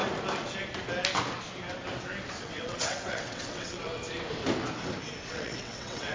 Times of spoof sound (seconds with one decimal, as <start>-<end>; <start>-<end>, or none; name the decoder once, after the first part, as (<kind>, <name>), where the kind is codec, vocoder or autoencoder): 2.4-3.9 (vocoder, WaveNeXt); 5.3-6.1